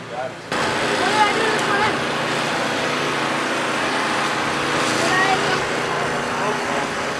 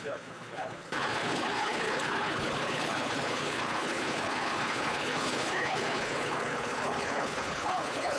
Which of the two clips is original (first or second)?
first